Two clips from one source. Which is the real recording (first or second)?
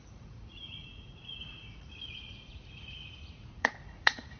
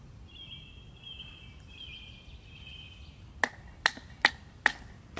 second